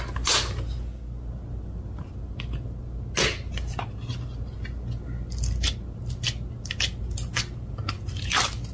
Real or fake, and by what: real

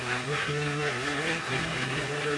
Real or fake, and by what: fake, codec, SNAC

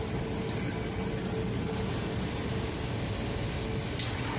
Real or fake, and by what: real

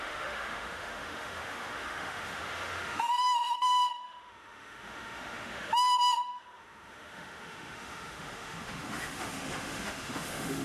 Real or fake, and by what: fake, autoencoder, DAC-VAE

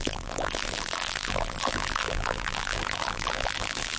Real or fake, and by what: fake, vocoder, BigVGAN v2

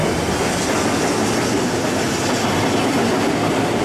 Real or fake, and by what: real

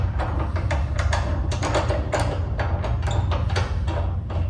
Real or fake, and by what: real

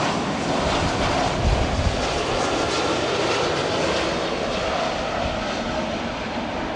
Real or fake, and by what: real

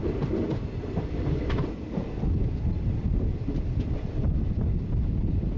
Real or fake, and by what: real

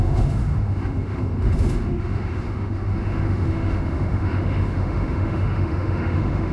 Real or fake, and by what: fake, autoencoder, DAC-VAE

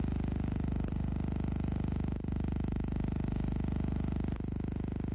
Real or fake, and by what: real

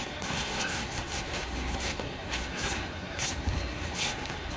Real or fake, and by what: fake, codec, SNAC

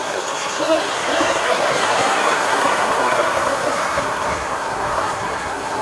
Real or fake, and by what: fake, codec, SNAC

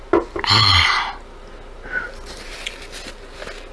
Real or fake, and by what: real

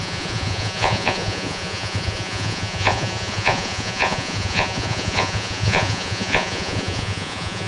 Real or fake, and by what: fake, vocoder, Vocos